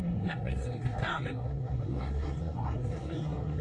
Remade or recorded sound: remade